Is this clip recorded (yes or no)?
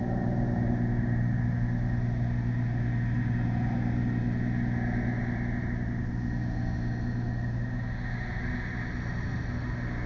yes